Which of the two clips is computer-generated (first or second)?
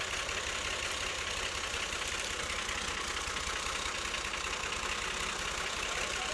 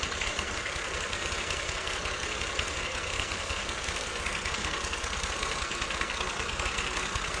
second